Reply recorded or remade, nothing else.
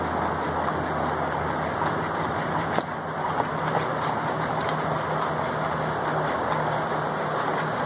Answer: recorded